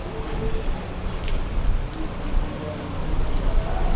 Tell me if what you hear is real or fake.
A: real